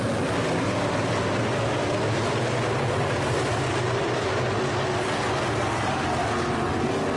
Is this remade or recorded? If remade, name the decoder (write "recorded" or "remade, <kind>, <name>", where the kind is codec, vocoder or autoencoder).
recorded